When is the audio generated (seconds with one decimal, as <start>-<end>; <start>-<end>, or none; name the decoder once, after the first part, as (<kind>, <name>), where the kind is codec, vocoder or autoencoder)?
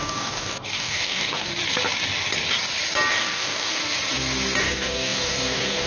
0.0-1.5 (codec, DAC); 3.1-3.8; 4.6-5.9